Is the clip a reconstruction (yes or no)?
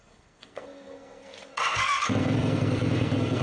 yes